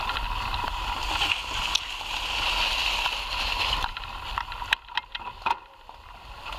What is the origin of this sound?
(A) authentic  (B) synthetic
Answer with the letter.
A